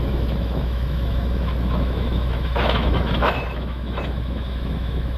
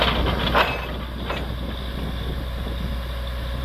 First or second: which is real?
second